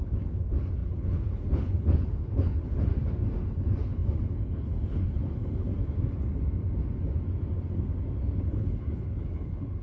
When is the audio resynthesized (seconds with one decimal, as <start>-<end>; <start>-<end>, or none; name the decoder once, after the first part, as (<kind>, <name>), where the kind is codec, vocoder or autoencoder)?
0.0-2.9 (codec, HILCodec); 3.5-5.7; 8.2-9.8